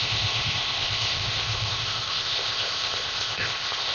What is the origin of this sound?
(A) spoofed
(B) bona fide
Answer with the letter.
A